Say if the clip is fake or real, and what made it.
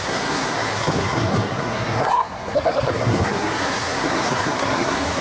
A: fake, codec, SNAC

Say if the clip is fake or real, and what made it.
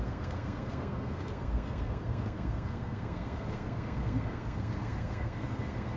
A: fake, codec, SNAC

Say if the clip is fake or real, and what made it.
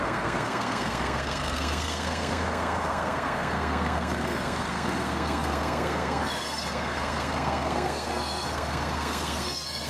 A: fake, codec, SNAC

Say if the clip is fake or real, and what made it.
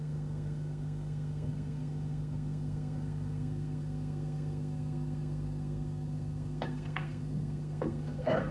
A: fake, codec, SNAC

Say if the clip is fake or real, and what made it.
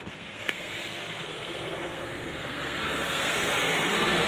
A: fake, codec, SNAC